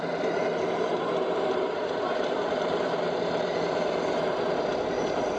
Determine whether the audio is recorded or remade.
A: remade